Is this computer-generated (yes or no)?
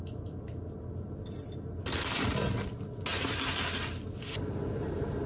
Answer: no